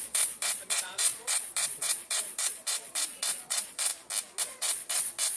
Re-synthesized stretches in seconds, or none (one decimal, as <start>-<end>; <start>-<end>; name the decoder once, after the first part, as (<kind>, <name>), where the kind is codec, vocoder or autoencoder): 0.0-3.9 (vocoder, Vocos); 4.4-5.4